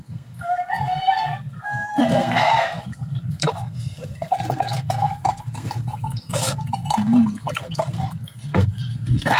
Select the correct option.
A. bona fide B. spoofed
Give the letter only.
B